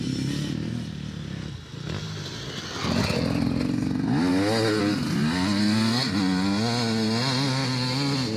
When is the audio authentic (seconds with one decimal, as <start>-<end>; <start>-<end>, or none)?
0.0-8.4